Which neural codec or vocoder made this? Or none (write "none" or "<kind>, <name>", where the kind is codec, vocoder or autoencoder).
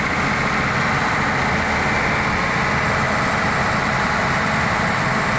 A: none